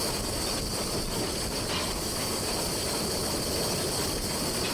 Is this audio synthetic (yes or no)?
no